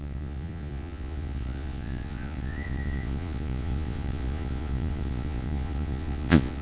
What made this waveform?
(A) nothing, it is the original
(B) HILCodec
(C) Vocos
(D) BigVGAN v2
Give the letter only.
C